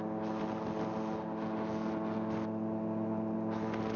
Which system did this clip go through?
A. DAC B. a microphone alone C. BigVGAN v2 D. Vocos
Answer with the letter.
B